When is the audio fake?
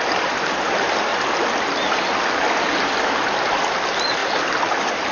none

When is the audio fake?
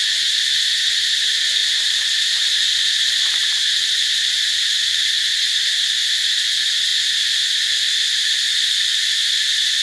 1.6-5.1 (vocoder, BigVGAN v2)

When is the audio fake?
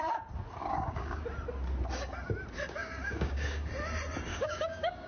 0.6-1.2 (codec, DAC); 2.8-3.7; 4.3-5.1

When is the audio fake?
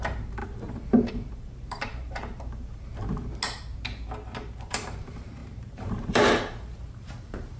0.0-2.9 (vocoder, BigVGAN v2); 4.7-7.6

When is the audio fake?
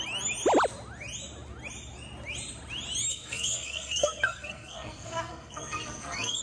3.1-6.4 (codec, SNAC)